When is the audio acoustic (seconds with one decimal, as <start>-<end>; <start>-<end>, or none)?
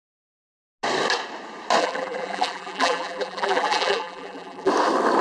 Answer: 0.0-1.8; 4.7-5.2